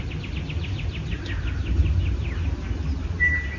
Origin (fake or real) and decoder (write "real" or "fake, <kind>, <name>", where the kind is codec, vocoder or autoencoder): real